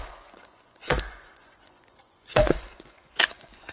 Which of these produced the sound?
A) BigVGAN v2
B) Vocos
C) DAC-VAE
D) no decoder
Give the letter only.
B